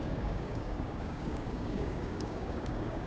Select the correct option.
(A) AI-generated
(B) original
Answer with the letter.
A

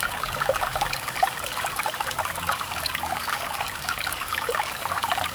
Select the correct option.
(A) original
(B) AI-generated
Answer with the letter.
B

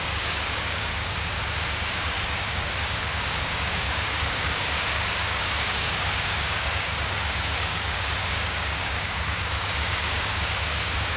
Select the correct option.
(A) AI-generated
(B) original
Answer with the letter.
A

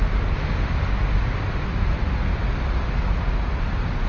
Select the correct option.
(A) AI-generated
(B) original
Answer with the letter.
B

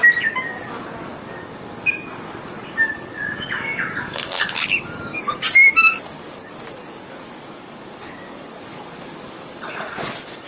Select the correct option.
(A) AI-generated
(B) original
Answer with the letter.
A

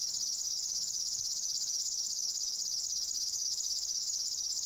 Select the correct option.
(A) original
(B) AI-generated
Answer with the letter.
B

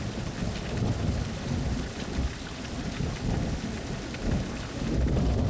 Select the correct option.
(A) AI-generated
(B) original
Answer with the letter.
B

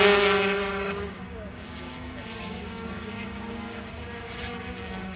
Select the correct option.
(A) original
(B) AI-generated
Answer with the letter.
B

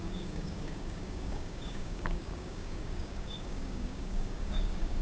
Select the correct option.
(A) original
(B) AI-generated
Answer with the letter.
B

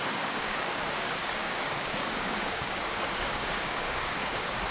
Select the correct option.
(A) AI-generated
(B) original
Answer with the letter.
A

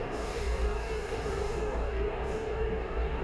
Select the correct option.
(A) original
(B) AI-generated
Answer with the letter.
B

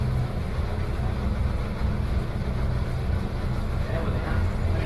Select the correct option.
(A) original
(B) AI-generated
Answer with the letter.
A